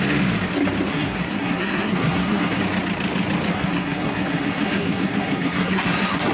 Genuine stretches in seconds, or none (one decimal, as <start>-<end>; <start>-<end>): 0.0-0.9; 2.6-3.5